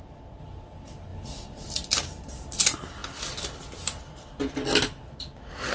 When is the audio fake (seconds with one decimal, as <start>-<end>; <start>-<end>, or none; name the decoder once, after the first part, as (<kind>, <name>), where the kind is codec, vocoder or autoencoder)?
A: none